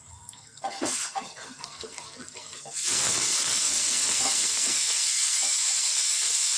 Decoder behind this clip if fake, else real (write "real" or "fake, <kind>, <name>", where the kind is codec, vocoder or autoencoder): fake, codec, SNAC